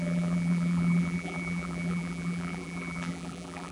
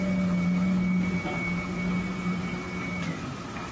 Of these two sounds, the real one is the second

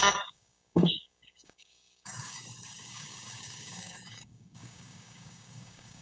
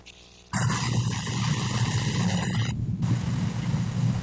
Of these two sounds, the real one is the second